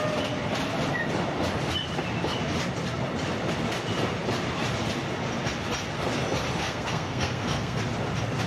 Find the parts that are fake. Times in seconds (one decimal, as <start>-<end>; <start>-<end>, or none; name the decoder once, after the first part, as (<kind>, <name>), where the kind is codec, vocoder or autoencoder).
6.6-7.8 (codec, SNAC)